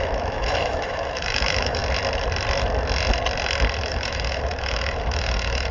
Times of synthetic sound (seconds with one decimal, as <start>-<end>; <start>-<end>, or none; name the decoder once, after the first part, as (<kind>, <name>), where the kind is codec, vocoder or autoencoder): 0.0-1.8 (autoencoder, DAC-VAE); 3.9-5.7